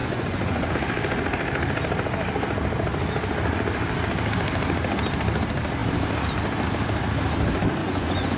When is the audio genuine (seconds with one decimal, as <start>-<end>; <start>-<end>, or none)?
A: 0.7-7.8